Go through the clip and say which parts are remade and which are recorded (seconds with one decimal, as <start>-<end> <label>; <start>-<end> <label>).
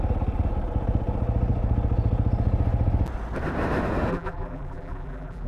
0.0-4.1 recorded; 4.1-5.5 remade